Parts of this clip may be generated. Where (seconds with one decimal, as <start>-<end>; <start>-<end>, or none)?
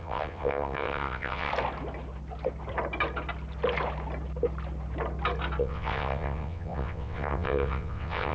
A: 0.0-1.5; 5.6-8.3